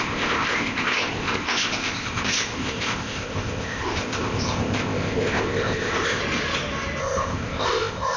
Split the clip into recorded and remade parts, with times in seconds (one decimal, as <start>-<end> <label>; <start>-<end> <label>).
0.0-6.2 remade; 6.2-7.0 recorded; 7.0-8.2 remade